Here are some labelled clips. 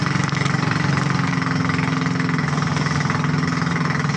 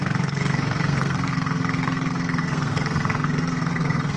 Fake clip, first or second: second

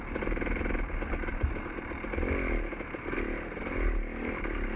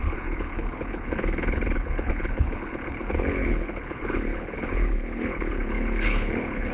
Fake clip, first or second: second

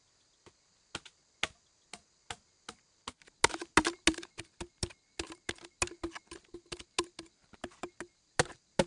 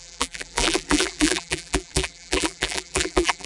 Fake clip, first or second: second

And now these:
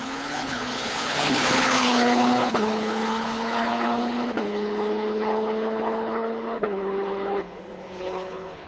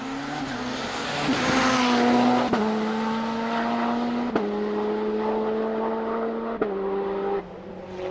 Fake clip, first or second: first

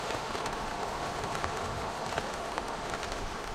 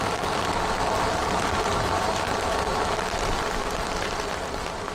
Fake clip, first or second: first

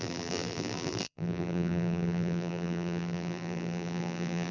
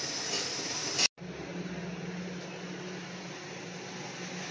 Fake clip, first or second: first